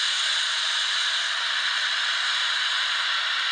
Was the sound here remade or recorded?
recorded